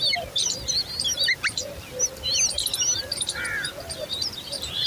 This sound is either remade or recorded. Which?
recorded